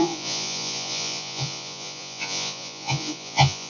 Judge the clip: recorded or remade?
remade